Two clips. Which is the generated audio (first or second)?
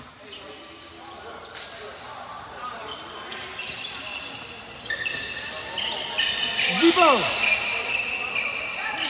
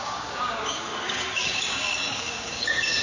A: second